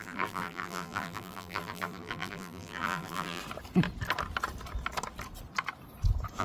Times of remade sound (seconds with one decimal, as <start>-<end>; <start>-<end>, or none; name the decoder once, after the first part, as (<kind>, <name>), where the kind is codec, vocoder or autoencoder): 0.0-3.4 (vocoder, BigVGAN v2)